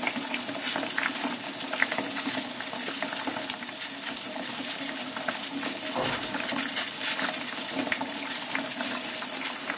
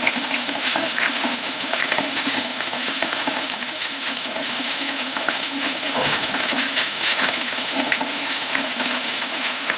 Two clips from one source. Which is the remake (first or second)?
second